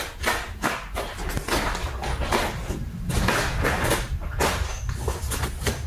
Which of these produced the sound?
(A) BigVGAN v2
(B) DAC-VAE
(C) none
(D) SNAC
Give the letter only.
C